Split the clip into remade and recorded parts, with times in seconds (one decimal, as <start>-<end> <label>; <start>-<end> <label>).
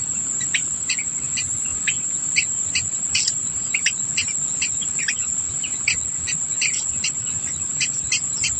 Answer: 0.0-8.6 recorded